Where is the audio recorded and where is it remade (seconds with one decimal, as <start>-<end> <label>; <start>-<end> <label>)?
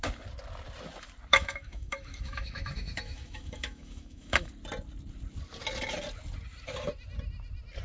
0.0-1.3 recorded; 1.3-4.5 remade; 4.5-7.8 recorded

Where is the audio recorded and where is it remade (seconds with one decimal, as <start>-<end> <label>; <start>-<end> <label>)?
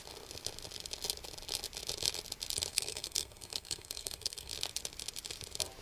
0.0-2.7 recorded; 2.7-4.5 remade; 4.5-5.8 recorded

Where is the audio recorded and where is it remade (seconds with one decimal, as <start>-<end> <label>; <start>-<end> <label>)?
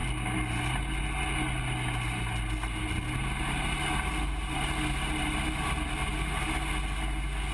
0.0-7.5 recorded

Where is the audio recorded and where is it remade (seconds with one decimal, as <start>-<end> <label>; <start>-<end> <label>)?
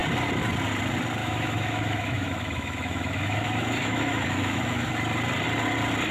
0.0-1.2 recorded; 1.2-4.9 remade; 4.9-6.1 recorded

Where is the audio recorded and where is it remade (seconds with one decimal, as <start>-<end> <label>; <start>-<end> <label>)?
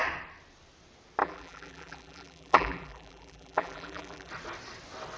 0.0-1.2 recorded; 1.2-4.3 remade; 4.3-5.2 recorded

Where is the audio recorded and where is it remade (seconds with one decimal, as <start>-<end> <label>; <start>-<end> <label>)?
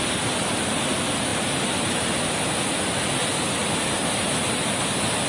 0.0-5.3 recorded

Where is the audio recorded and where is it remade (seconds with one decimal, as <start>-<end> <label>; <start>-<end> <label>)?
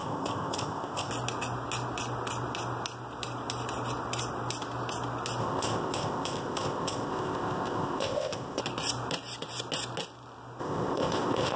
0.0-1.1 remade; 1.1-5.4 recorded; 5.4-8.6 remade; 8.6-10.6 recorded; 10.6-11.6 remade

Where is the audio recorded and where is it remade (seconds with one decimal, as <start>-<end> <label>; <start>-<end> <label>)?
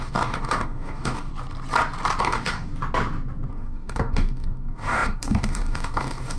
0.0-1.3 remade; 1.3-2.2 recorded; 2.2-2.7 remade; 2.7-3.5 recorded; 3.5-6.4 remade